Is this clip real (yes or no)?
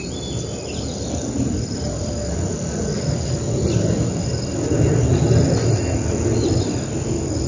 yes